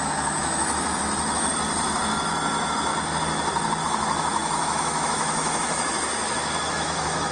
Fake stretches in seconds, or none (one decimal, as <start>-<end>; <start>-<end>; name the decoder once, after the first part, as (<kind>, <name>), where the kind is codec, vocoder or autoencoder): 0.0-1.5 (autoencoder, DAC-VAE); 2.3-2.9; 3.8-7.3